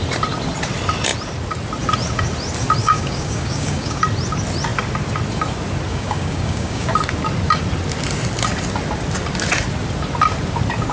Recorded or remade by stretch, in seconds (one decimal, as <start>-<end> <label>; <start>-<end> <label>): 0.0-2.8 recorded; 2.8-4.0 remade; 4.0-5.9 recorded; 5.9-6.9 remade; 6.9-10.9 recorded